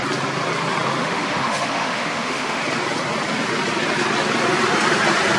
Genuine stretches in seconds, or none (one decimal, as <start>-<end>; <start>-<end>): 0.0-1.0; 2.6-5.4